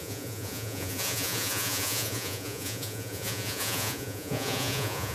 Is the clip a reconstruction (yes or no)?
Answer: yes